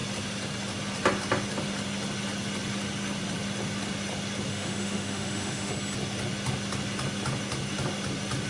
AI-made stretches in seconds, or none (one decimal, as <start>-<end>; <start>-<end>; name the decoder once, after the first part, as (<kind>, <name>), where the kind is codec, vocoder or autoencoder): 4.5-5.7 (autoencoder, DAC-VAE)